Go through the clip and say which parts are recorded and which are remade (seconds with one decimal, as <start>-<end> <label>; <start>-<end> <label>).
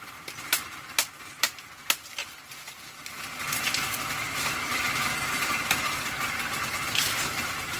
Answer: 0.0-2.2 remade; 2.2-3.8 recorded; 3.8-4.7 remade; 4.7-5.8 recorded; 5.8-7.8 remade